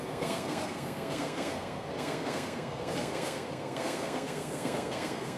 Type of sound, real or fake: fake